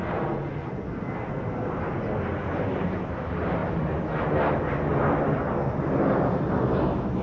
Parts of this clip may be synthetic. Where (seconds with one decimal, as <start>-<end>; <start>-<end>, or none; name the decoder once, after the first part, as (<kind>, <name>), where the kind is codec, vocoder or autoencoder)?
none